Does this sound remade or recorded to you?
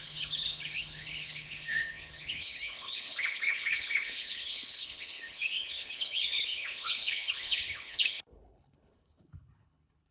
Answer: remade